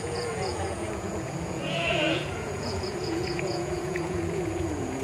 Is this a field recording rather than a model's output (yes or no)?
no